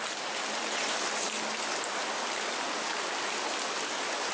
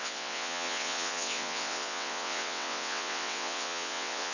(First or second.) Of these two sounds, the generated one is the second